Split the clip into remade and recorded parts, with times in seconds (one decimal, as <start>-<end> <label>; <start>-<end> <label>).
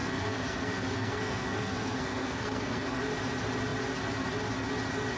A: 0.0-3.0 remade; 3.0-5.2 recorded